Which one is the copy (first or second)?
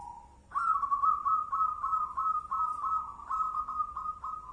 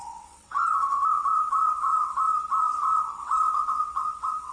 second